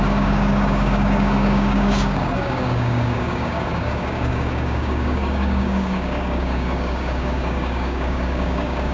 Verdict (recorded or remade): remade